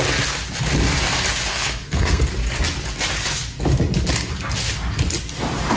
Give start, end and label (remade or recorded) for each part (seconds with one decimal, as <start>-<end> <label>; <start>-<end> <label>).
0.0-1.5 recorded; 1.5-2.3 remade; 2.3-5.8 recorded